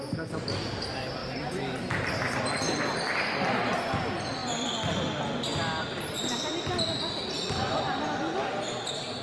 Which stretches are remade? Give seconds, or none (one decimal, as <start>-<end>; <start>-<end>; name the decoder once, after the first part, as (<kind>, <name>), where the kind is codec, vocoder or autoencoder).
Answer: 1.2-2.8 (vocoder, BigVGAN v2)